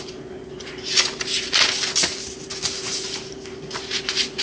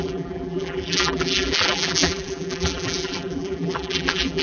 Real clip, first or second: first